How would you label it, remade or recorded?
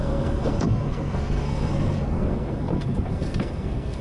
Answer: remade